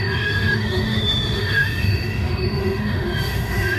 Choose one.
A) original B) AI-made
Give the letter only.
B